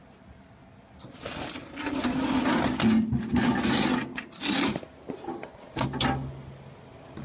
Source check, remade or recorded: recorded